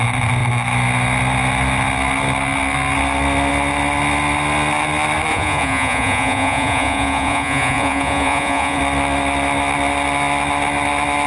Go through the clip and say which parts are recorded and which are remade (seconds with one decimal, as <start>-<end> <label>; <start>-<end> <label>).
0.0-5.3 recorded; 5.3-8.8 remade; 8.8-11.3 recorded